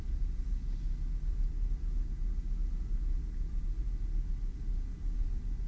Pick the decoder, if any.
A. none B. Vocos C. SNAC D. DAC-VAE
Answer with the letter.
A